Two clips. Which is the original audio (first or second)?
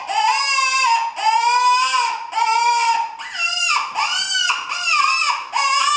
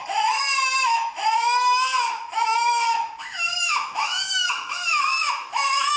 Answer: first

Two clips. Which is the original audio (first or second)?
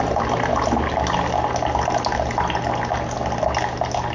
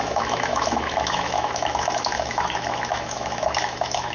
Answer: first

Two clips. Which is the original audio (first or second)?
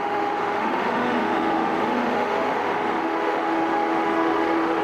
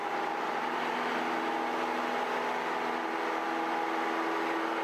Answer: second